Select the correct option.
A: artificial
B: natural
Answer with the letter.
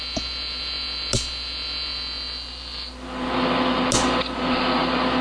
B